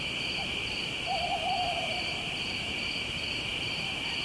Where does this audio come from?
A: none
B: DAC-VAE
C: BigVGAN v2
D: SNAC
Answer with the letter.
C